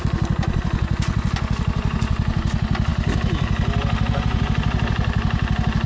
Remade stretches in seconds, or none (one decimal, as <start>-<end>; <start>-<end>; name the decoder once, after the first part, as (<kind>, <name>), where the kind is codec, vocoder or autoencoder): none